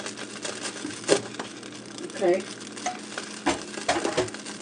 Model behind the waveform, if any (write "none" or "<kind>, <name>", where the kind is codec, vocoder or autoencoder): none